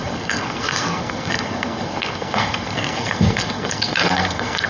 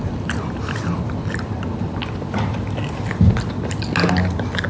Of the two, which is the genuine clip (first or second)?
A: second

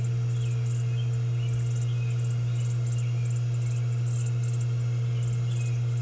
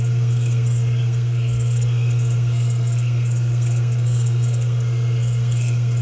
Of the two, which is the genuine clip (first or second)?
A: first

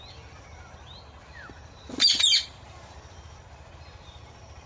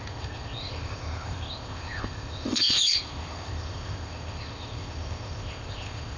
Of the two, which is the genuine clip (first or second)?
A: first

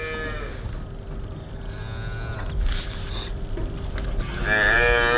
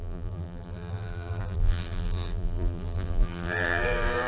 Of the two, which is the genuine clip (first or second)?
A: first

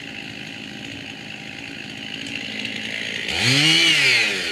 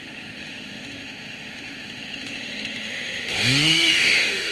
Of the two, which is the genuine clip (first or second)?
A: first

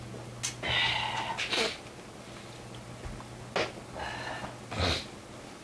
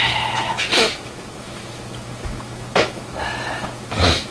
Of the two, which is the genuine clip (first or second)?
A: first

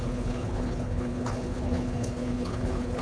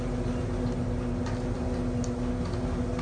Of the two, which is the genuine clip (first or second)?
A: second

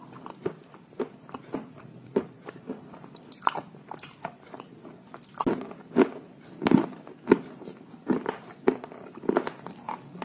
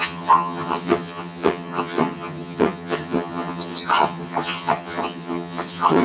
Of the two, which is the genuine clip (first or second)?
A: first